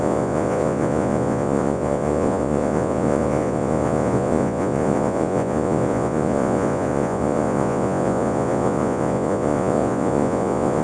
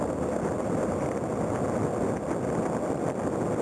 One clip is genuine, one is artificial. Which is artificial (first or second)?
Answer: first